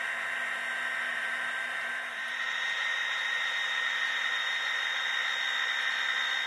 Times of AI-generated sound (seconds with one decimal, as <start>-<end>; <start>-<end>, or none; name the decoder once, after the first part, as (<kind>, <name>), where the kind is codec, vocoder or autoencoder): 1.1-5.0 (vocoder, BigVGAN v2)